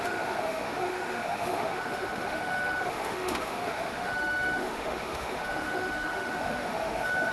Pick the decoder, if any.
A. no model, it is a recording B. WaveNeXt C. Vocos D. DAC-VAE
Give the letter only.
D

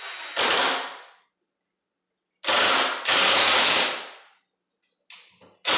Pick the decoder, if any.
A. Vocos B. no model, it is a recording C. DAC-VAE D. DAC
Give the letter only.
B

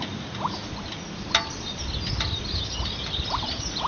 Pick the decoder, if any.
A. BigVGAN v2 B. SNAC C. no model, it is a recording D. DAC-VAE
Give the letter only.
C